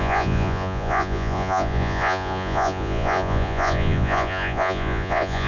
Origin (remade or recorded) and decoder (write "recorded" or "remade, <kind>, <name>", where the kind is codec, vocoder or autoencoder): remade, vocoder, Vocos